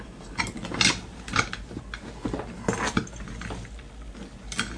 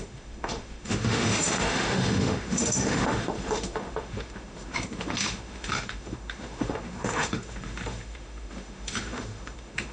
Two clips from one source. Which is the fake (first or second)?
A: second